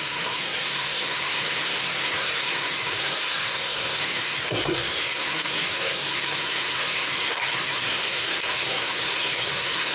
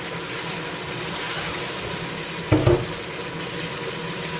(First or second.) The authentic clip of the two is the second